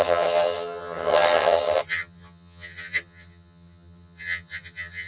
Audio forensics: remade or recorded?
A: remade